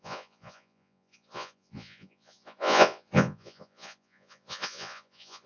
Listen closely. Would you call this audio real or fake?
fake